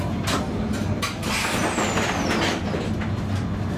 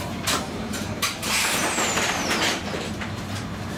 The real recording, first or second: first